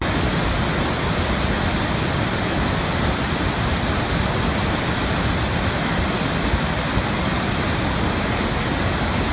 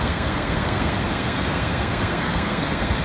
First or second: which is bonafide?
first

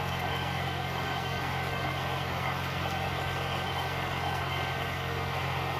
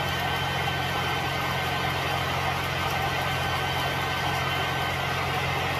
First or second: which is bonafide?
second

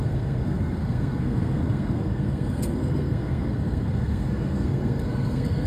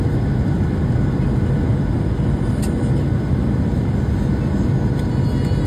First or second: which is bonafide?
second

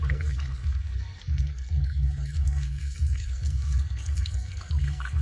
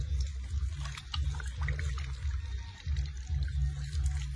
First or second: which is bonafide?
second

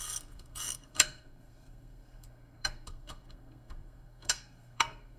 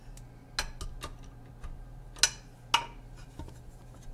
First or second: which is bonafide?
second